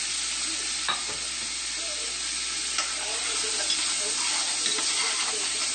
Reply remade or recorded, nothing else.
recorded